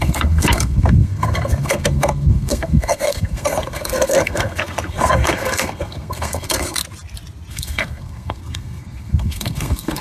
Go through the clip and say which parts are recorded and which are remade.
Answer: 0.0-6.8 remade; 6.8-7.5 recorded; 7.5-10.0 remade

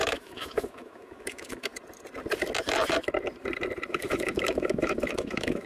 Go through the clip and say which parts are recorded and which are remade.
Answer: 0.0-1.7 remade; 1.7-3.9 recorded; 3.9-5.7 remade

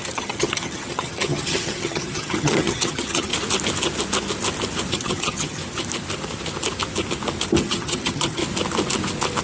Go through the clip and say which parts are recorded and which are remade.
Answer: 0.0-3.3 remade; 3.3-4.9 recorded; 4.9-5.6 remade; 5.6-7.6 recorded; 7.6-8.4 remade; 8.4-9.4 recorded

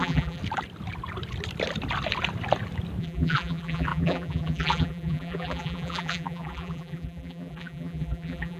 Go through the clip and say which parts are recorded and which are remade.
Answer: 0.0-0.4 remade; 0.4-3.0 recorded; 3.0-8.6 remade

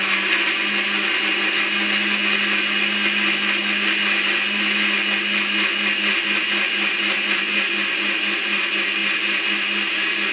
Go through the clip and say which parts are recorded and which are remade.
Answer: 0.0-10.3 recorded

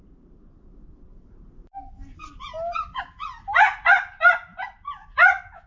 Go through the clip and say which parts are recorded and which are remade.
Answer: 0.0-5.7 recorded